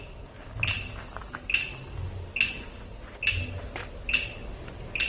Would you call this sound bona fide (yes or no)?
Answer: yes